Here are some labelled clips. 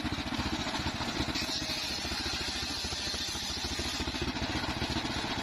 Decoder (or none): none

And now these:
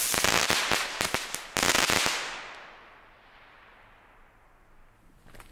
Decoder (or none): none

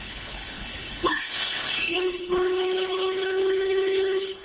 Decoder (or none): codec, HILCodec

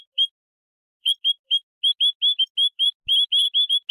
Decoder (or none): none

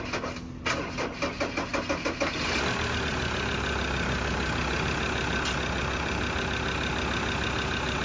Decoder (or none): none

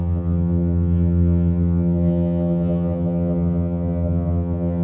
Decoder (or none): vocoder, HiFi-GAN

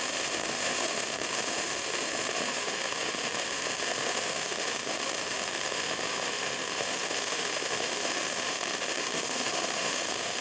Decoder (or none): autoencoder, DAC-VAE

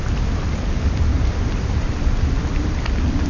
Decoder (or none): none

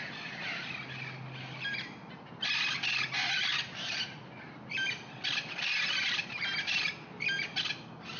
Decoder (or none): none